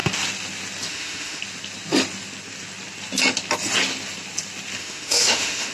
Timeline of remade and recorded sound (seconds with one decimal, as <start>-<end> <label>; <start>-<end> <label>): 0.0-0.9 recorded; 0.9-1.4 remade; 1.4-4.8 recorded; 4.8-5.7 remade